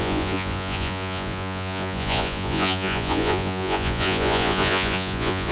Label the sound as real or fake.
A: fake